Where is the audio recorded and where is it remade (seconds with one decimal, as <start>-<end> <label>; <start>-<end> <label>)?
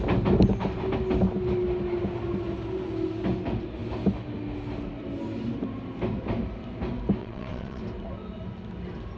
0.0-7.2 recorded; 7.2-7.8 remade; 7.8-9.2 recorded